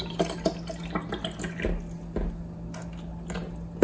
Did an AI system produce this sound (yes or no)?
no